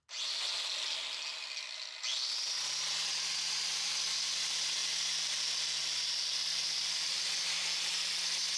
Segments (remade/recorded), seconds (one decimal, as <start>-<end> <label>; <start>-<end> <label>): 0.0-5.8 recorded; 5.8-7.8 remade; 7.8-8.6 recorded